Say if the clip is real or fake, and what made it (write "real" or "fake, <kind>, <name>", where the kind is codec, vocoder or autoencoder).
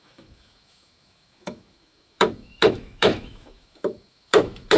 fake, autoencoder, DAC-VAE